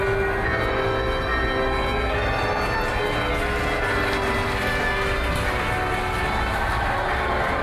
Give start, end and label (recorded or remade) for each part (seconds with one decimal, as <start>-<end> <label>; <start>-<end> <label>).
0.0-7.6 recorded